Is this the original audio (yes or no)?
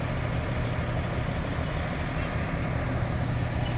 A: yes